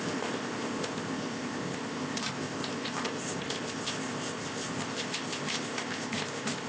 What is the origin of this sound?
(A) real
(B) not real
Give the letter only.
B